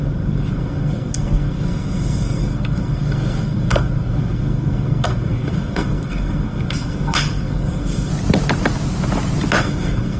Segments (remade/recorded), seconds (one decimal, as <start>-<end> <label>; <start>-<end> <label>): 0.0-8.1 remade; 8.1-9.6 recorded; 9.6-10.2 remade